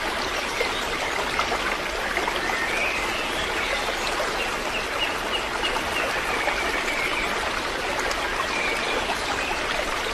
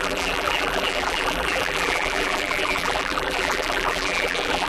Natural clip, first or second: first